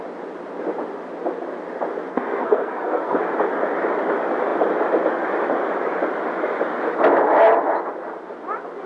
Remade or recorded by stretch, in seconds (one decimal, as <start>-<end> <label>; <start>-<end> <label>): 0.0-2.1 recorded; 2.1-3.2 remade; 3.2-8.9 recorded